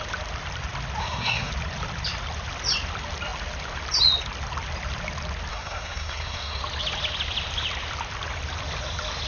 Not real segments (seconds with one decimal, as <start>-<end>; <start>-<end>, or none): 1.0-1.5; 5.5-6.6